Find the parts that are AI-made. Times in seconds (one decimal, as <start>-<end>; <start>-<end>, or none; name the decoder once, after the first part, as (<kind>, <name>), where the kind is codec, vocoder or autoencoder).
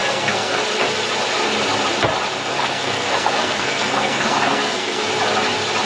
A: 0.0-0.6 (codec, SNAC); 2.5-5.1